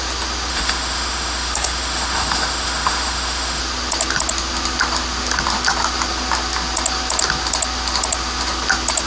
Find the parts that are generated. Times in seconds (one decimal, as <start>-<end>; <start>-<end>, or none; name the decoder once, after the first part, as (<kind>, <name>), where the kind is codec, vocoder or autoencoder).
0.5-3.6 (autoencoder, DAC-VAE)